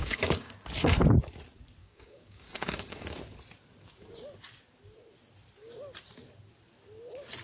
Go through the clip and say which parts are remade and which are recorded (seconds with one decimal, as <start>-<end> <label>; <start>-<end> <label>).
0.0-0.5 remade; 0.5-1.8 recorded; 1.8-3.2 remade; 3.2-7.4 recorded